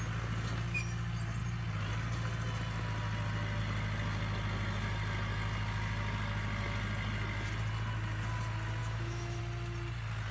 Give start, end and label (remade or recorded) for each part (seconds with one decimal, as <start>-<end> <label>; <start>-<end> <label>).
0.0-8.8 recorded; 8.8-9.4 remade; 9.4-10.3 recorded